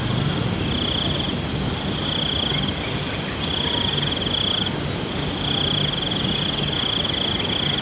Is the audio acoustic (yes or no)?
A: yes